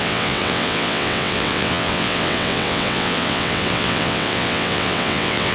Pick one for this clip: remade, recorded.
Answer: remade